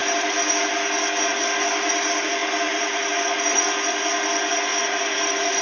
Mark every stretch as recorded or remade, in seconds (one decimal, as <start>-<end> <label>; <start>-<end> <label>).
0.0-2.4 recorded; 2.4-3.1 remade; 3.1-4.7 recorded; 4.7-5.6 remade